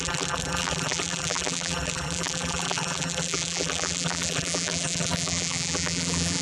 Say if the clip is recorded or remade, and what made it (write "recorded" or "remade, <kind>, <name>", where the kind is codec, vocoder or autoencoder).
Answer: remade, vocoder, BigVGAN v2